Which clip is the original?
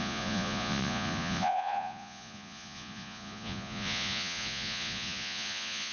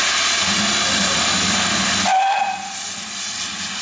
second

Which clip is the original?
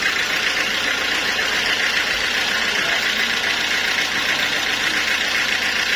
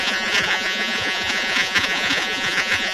first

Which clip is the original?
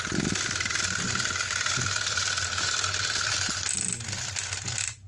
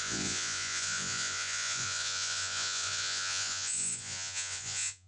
first